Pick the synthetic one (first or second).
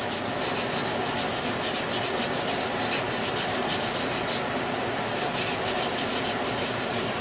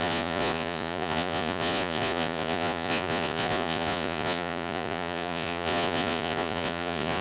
second